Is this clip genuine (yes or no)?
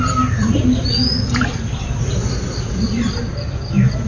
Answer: yes